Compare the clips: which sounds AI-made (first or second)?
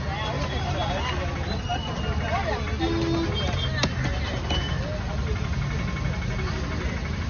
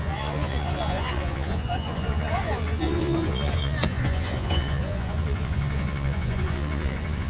second